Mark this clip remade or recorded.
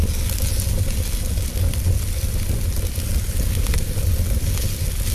recorded